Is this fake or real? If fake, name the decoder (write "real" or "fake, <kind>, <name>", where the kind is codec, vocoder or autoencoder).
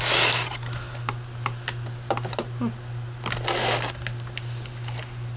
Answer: real